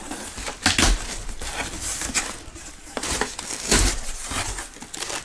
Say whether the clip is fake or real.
real